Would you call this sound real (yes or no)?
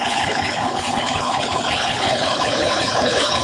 no